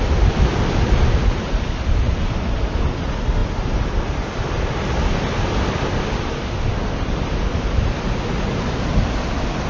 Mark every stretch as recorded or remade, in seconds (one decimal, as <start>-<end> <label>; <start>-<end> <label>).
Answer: 0.0-9.7 recorded